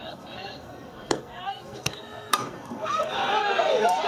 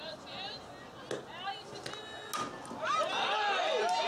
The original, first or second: second